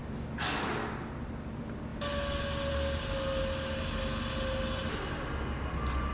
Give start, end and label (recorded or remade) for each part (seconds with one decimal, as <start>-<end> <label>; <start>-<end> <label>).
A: 0.0-6.1 recorded